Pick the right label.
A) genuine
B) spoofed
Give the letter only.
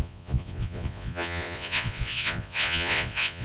B